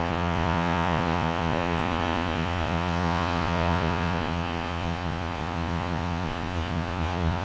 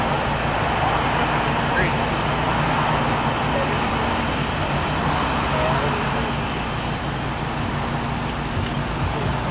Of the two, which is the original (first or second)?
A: second